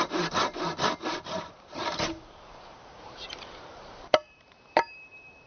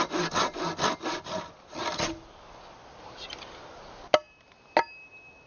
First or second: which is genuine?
second